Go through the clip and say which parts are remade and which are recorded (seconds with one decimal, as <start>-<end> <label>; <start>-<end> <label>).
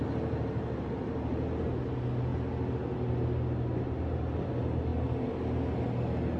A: 0.0-1.3 remade; 1.3-6.4 recorded